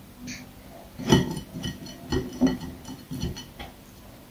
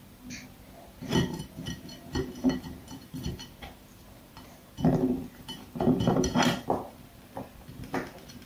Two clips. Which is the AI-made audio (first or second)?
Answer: second